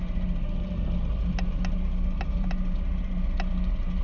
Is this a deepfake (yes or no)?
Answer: no